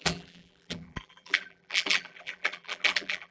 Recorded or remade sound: remade